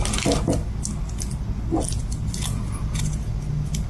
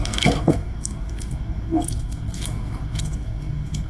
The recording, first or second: first